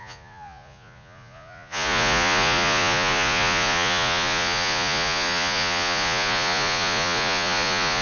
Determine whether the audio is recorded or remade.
remade